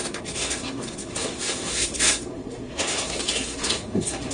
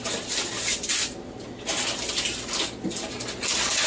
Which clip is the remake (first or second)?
first